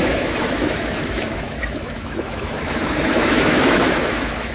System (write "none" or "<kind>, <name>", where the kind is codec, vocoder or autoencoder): autoencoder, DAC-VAE